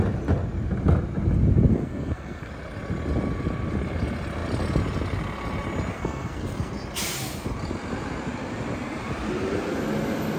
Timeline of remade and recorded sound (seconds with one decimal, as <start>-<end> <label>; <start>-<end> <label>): 0.0-1.7 recorded; 1.7-2.5 remade; 2.5-5.9 recorded; 5.9-6.7 remade; 6.7-10.4 recorded